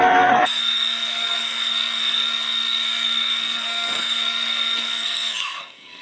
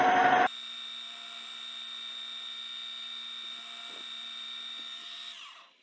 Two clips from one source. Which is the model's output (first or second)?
first